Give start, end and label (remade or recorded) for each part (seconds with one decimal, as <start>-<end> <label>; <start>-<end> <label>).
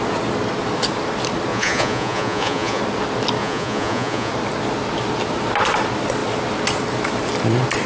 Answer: 0.0-1.5 recorded; 1.5-2.8 remade; 2.8-3.4 recorded; 3.4-4.3 remade; 4.3-7.9 recorded